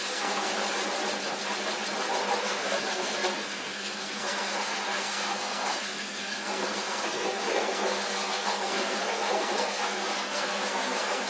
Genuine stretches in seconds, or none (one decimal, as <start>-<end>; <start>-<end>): 0.5-2.4